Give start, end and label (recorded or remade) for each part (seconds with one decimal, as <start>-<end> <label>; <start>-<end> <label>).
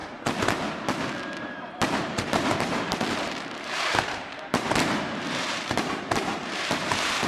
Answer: 0.0-3.1 recorded; 3.1-7.3 remade